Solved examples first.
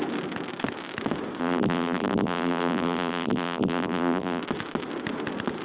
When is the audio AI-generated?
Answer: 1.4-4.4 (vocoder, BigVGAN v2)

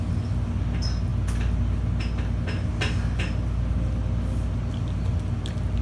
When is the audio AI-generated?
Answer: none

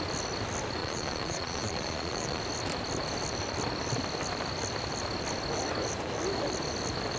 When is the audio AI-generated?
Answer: 0.8-2.4 (vocoder, Vocos)

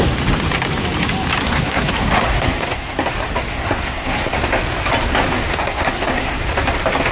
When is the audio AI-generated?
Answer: 1.4-3.1 (codec, SNAC); 3.5-4.4; 5.5-6.4

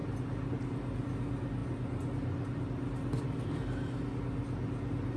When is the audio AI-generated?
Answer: none

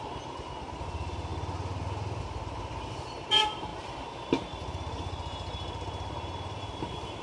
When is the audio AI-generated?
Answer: 0.0-1.3 (vocoder, BigVGAN v2); 2.2-7.2